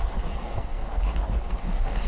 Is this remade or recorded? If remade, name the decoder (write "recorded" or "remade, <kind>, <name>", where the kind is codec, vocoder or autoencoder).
remade, codec, SNAC